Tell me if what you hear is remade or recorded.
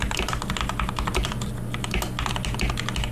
recorded